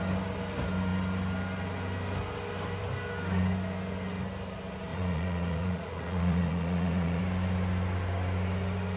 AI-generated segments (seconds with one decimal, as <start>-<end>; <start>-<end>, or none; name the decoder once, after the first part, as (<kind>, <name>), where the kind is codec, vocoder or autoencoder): 4.9-7.2 (vocoder, Vocos)